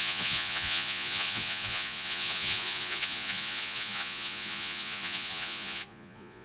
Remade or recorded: remade